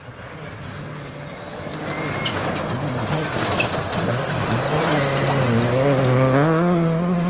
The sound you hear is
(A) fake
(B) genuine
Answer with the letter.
B